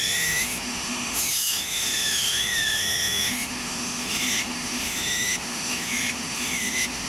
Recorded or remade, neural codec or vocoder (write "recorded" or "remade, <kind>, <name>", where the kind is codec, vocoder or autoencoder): remade, autoencoder, DAC-VAE